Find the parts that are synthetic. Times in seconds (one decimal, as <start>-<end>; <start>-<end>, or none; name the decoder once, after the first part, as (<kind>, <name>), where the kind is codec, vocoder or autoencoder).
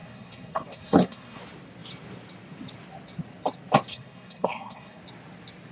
0.0-1.4 (codec, SNAC); 3.9-5.0